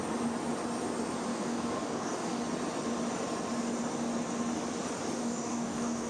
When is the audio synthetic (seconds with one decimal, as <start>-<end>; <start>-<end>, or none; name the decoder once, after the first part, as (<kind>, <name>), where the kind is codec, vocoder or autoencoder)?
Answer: 1.3-2.4 (codec, DAC); 5.2-6.1

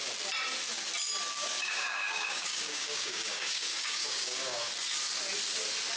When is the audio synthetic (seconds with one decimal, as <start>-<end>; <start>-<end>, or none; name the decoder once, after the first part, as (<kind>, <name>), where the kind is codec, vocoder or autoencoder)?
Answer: 1.6-4.7 (codec, DAC)